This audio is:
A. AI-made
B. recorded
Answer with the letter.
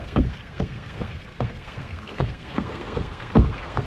A